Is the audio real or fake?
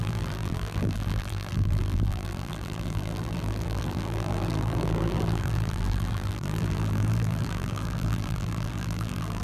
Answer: fake